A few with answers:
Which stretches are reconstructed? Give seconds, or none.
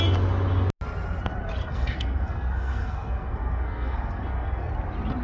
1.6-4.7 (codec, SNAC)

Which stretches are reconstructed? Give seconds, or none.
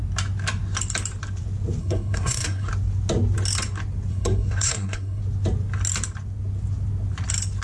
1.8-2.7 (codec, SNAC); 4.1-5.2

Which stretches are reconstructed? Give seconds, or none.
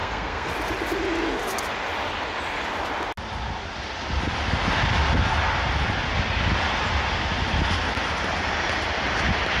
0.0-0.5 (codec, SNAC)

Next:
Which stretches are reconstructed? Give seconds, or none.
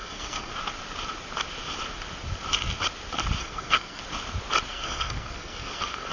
0.0-0.5 (codec, SNAC); 3.4-4.0; 4.7-6.1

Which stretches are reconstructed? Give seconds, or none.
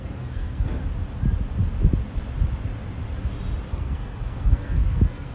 0.0-0.8 (codec, SNAC); 3.7-5.3